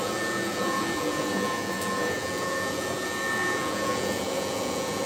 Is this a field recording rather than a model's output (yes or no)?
no